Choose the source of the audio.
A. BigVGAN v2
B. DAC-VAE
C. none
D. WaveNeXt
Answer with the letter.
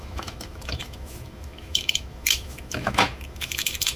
B